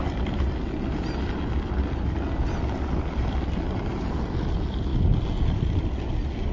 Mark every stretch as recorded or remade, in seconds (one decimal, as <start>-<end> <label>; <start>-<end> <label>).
0.0-6.5 recorded

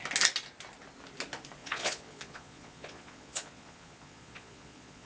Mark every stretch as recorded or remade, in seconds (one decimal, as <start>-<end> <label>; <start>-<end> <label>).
0.0-1.6 recorded; 1.6-5.1 remade

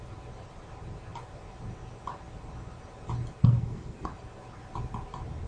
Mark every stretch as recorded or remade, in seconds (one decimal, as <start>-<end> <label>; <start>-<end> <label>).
0.0-3.4 recorded; 3.4-4.1 remade; 4.1-5.5 recorded

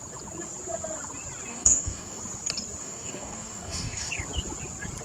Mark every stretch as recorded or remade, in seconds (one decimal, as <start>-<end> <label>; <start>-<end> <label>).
0.0-1.5 recorded; 1.5-2.2 remade; 2.2-2.8 recorded; 2.8-4.1 remade; 4.1-5.0 recorded

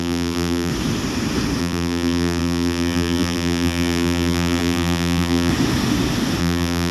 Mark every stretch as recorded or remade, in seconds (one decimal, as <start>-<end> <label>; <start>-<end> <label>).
0.0-0.7 remade; 0.7-1.6 recorded; 1.6-5.5 remade; 5.5-6.4 recorded; 6.4-6.9 remade

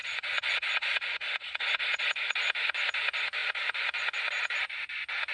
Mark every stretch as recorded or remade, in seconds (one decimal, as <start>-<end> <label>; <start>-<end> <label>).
0.0-2.1 remade; 2.1-5.3 recorded

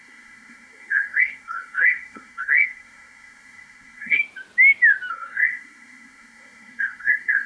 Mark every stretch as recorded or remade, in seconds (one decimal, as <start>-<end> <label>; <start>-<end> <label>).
0.0-4.2 remade; 4.2-5.1 recorded; 5.1-7.5 remade